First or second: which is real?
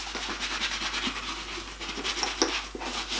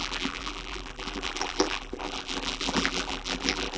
first